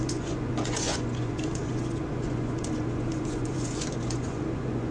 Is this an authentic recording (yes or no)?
no